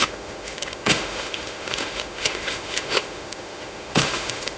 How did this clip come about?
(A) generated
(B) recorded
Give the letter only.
A